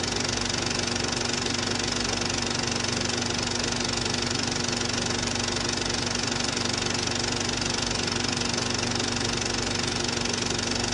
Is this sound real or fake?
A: real